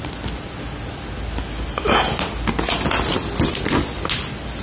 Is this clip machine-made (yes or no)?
no